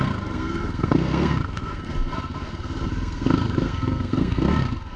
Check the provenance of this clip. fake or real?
fake